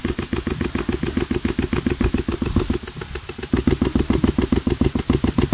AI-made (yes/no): no